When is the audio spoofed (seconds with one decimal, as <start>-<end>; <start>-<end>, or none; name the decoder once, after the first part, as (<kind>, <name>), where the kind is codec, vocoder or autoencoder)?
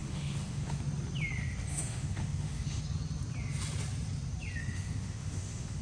0.0-0.8 (autoencoder, DAC-VAE); 1.7-2.8; 4.6-5.8